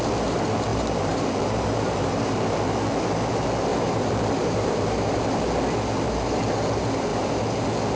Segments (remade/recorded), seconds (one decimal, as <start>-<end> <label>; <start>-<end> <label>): 0.0-0.7 recorded; 0.7-2.7 remade; 2.7-3.7 recorded; 3.7-5.2 remade; 5.2-8.0 recorded

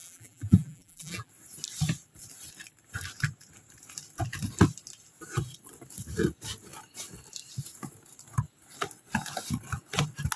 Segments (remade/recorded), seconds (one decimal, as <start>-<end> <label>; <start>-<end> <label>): 0.0-1.3 remade; 1.3-10.4 recorded